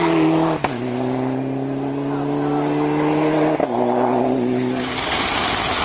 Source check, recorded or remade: recorded